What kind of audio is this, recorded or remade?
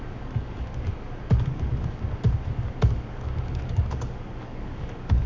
remade